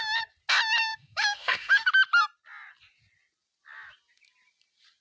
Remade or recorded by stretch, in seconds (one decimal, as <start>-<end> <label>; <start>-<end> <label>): 0.0-0.8 recorded; 0.8-1.9 remade; 1.9-5.0 recorded